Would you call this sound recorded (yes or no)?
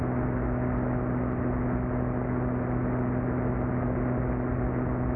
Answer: yes